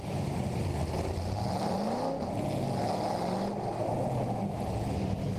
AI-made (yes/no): no